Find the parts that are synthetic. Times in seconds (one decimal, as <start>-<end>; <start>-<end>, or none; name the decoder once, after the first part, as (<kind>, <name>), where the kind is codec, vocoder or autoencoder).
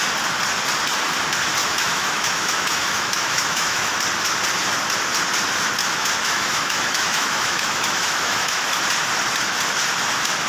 1.6-4.0 (autoencoder, DAC-VAE); 5.8-8.8